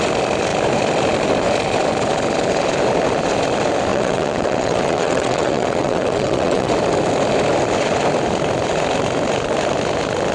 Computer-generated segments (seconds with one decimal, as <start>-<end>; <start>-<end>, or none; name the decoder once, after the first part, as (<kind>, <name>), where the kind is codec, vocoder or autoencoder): 3.9-6.7 (vocoder, WaveNeXt)